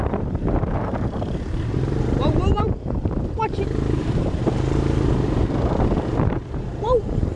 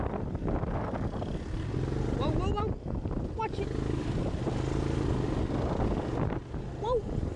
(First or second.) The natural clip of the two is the second